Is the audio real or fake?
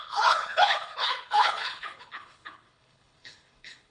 fake